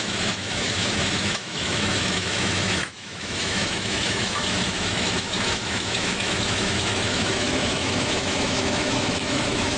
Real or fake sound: fake